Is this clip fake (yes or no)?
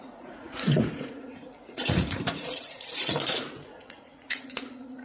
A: yes